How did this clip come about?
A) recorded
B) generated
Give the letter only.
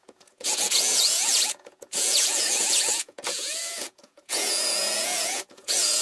B